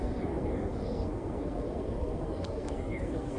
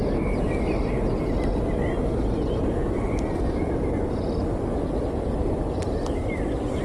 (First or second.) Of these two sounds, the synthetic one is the first